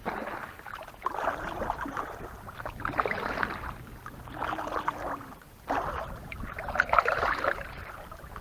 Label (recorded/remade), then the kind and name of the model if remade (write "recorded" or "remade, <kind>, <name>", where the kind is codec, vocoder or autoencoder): recorded